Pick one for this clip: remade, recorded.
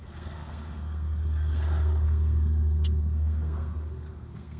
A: remade